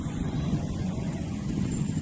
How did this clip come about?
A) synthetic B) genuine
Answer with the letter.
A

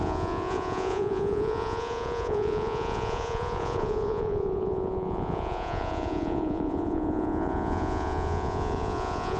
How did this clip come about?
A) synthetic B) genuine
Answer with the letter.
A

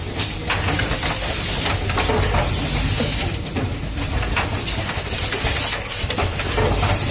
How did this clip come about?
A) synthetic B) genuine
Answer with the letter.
B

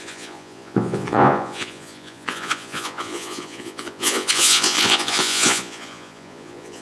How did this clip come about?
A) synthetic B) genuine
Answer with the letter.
A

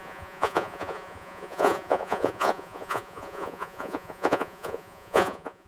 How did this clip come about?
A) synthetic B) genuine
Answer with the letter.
A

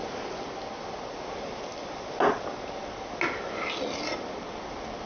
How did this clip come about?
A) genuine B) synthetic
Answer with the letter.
A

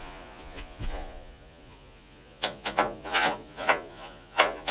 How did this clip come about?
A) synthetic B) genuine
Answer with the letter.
A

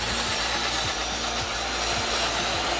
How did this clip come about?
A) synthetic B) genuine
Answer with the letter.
B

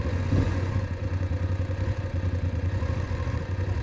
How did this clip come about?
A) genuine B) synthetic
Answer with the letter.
B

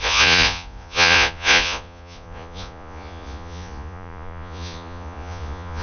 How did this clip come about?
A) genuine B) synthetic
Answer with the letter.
B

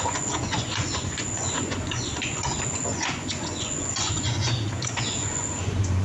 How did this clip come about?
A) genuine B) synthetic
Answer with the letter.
B